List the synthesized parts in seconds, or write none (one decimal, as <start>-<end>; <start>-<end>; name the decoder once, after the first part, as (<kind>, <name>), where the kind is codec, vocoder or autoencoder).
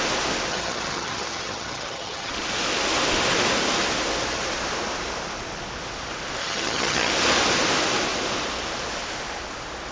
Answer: 0.5-2.3 (vocoder, HiFi-GAN); 6.4-7.1